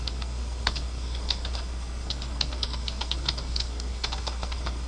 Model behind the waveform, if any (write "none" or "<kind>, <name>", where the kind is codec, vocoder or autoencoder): codec, SNAC